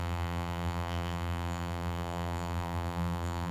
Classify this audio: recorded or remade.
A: remade